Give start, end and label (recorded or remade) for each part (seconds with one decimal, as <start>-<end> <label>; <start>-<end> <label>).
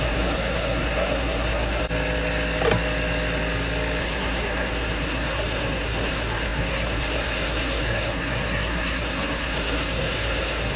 0.0-1.8 remade; 1.8-4.0 recorded; 4.0-10.8 remade